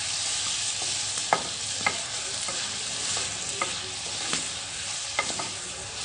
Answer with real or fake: real